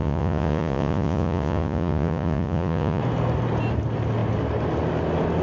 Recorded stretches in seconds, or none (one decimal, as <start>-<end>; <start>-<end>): 3.0-5.4